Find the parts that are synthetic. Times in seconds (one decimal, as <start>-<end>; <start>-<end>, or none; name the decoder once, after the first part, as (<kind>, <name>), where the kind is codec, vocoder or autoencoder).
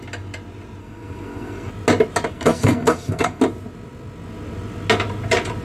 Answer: 0.8-1.7 (codec, SNAC); 2.3-3.4